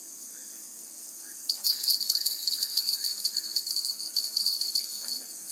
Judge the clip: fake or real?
fake